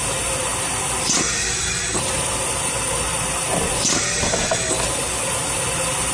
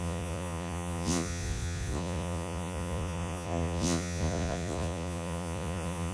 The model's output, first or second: second